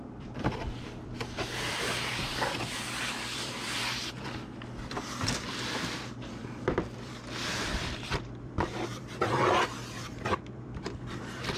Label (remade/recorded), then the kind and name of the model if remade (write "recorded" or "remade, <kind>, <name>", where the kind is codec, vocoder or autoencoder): remade, vocoder, BigVGAN v2